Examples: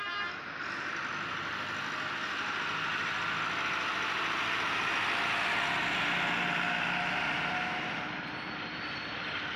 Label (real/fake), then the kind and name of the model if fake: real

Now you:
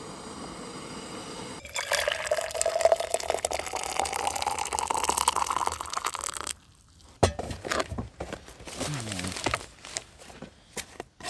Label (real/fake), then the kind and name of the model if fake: real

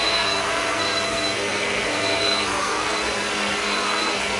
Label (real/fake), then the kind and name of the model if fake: fake, codec, SNAC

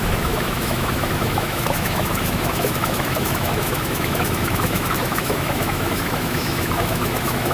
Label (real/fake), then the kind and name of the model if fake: fake, autoencoder, DAC-VAE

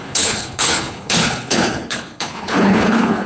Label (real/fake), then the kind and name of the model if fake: fake, codec, HILCodec